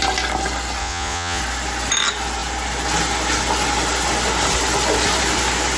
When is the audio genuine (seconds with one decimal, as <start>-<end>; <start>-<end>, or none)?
0.0-0.8; 1.4-5.8